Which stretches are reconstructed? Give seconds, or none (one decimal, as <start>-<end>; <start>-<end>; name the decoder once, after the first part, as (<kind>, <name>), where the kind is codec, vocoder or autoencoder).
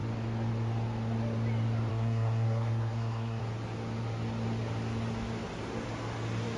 1.9-3.4 (codec, SNAC)